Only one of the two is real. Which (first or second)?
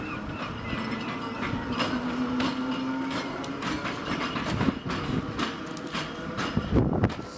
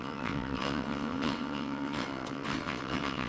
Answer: first